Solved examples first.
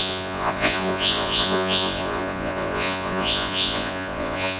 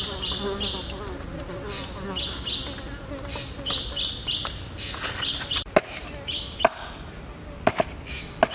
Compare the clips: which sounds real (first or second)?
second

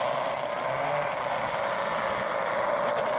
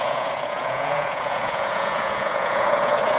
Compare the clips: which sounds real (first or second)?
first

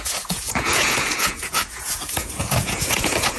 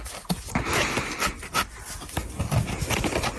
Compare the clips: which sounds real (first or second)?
second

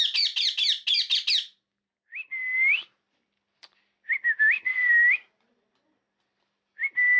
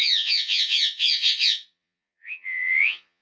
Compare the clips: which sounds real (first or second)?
first